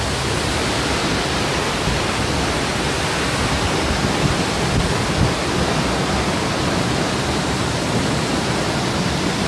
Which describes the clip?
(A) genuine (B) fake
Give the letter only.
A